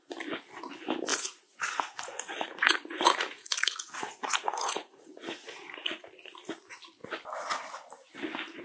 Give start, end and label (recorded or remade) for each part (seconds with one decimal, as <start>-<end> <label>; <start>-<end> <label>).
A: 0.0-1.1 recorded; 1.1-6.0 remade; 6.0-8.6 recorded